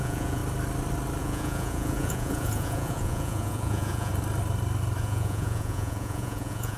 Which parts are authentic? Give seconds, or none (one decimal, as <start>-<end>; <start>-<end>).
0.4-1.2; 4.1-5.0

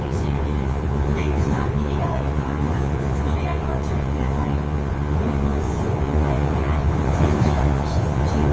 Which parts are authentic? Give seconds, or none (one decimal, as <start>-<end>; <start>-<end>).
none

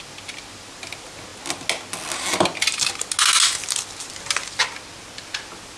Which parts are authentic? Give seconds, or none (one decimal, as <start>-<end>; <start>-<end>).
0.0-5.8

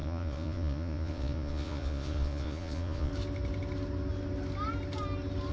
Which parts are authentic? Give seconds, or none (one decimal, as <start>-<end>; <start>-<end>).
3.1-5.5

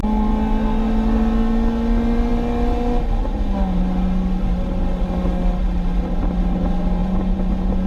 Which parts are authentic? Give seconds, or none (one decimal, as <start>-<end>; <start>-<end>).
0.0-7.0

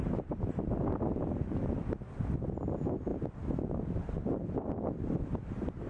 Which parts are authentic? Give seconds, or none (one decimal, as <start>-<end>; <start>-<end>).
0.0-5.9

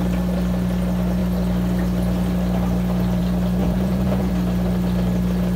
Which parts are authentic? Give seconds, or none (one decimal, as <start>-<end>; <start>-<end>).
0.0-3.6; 4.3-5.6